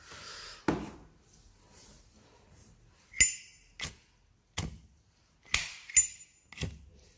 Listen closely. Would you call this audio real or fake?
real